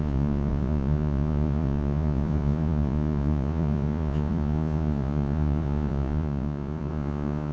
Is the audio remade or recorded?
remade